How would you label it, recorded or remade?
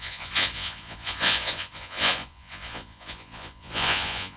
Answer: remade